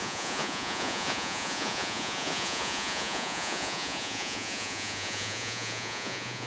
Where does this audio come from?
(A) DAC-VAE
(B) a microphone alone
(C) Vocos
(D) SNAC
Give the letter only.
C